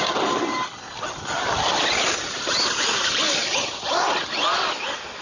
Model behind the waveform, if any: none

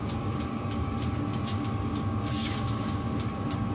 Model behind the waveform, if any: codec, DAC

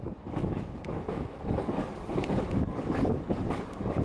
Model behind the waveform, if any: codec, DAC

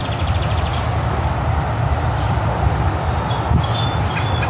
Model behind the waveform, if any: none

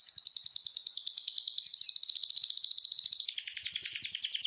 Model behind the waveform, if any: none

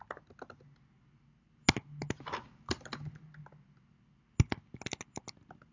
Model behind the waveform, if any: none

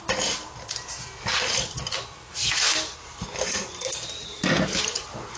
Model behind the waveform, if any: none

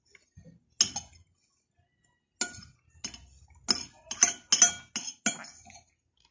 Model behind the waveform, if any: none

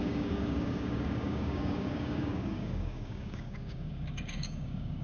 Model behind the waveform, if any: codec, DAC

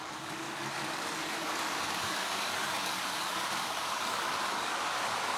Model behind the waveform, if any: codec, DAC